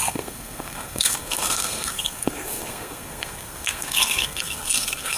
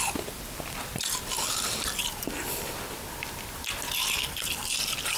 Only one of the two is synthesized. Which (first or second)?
first